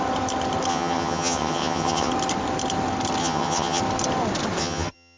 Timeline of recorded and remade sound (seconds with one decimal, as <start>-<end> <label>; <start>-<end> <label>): 0.0-0.7 recorded; 0.7-2.1 remade; 2.1-3.2 recorded; 3.2-3.8 remade; 3.8-4.6 recorded; 4.6-5.2 remade